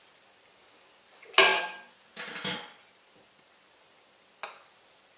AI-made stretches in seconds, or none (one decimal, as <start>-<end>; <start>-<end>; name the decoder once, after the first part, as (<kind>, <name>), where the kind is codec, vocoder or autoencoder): none

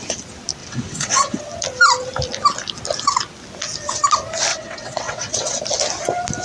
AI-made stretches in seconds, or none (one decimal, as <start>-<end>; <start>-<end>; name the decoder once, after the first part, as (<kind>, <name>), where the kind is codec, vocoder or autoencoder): 0.6-1.4 (vocoder, WaveNeXt); 4.5-5.6

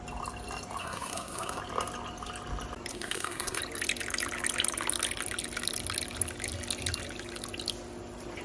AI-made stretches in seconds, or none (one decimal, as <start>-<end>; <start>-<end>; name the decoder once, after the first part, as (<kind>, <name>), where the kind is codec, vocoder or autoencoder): 0.8-1.6 (codec, SNAC); 2.9-3.6

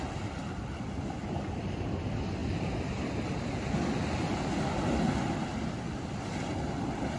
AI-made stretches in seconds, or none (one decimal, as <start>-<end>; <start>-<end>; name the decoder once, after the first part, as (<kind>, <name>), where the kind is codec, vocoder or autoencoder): none

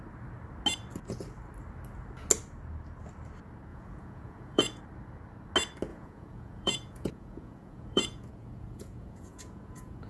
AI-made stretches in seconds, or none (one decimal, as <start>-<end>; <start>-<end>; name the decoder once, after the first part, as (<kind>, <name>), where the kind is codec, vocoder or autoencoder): 3.7-4.8 (vocoder, Vocos); 5.9-10.1

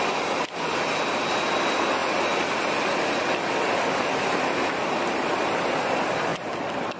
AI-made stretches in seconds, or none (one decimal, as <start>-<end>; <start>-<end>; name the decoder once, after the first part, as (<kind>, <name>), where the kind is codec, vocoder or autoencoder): none